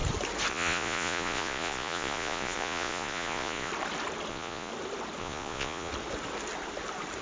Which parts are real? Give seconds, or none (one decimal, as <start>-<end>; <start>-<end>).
0.0-0.5; 3.7-4.3; 4.7-5.2; 5.9-7.2